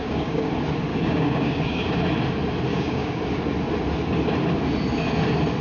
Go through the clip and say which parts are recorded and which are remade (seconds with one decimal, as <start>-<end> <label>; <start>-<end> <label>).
0.0-0.5 remade; 0.5-0.9 recorded; 0.9-2.0 remade; 2.0-2.7 recorded; 2.7-3.2 remade; 3.2-5.6 recorded